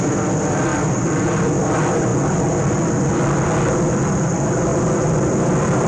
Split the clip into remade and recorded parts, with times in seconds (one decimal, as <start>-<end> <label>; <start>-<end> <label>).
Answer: 0.0-0.7 recorded; 0.7-1.3 remade; 1.3-4.7 recorded; 4.7-5.9 remade